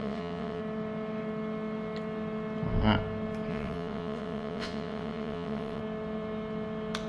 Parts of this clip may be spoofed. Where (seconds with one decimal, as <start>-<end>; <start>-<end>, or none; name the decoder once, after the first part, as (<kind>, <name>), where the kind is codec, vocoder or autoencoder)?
0.0-0.6 (vocoder, WaveNeXt); 3.5-5.8